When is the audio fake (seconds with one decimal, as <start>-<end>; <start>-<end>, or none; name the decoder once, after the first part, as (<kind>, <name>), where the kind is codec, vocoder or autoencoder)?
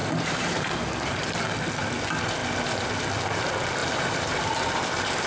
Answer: 0.0-0.7 (vocoder, BigVGAN v2); 3.8-4.4